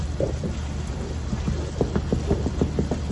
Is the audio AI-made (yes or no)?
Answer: no